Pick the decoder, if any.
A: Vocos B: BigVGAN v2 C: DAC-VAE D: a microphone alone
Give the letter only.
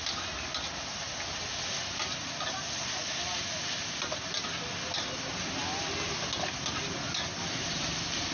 D